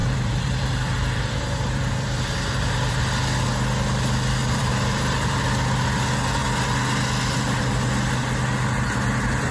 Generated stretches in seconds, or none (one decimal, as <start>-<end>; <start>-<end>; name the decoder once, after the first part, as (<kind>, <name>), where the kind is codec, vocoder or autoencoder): 0.0-3.0 (vocoder, BigVGAN v2); 4.4-5.4